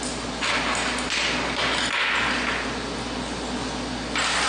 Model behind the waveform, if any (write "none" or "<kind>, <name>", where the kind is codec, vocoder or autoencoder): none